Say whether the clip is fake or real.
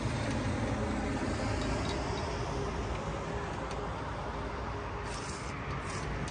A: real